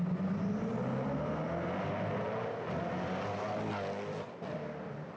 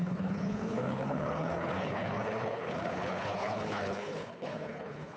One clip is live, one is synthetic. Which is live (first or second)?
first